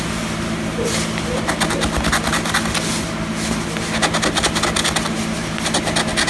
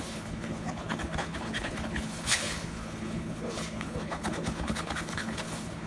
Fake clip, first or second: second